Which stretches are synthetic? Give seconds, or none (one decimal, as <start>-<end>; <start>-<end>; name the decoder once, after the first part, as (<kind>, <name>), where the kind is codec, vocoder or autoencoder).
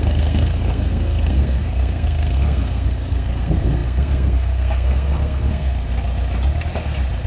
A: 0.0-5.9 (codec, SNAC)